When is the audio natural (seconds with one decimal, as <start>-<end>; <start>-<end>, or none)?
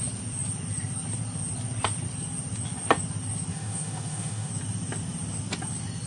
0.0-3.5; 4.5-6.1